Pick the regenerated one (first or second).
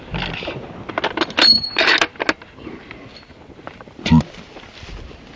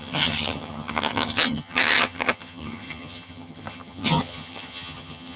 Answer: second